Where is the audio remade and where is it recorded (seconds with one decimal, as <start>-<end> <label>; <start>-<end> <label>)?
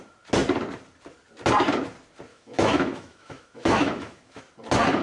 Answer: 0.0-2.3 recorded; 2.3-4.4 remade; 4.4-5.0 recorded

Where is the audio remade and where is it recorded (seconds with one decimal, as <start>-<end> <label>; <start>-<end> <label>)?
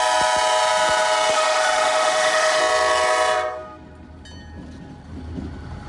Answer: 0.0-1.3 recorded; 1.3-2.6 remade; 2.6-5.9 recorded